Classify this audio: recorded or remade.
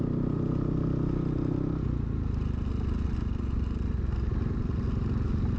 recorded